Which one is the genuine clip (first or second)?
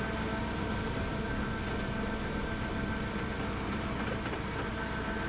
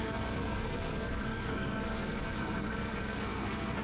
first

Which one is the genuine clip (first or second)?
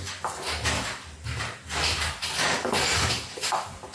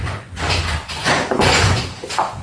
first